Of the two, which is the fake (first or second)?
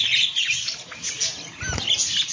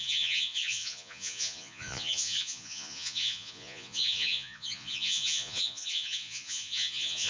second